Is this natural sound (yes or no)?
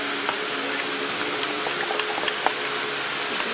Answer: yes